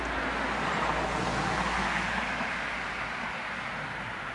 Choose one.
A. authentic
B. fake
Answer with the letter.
A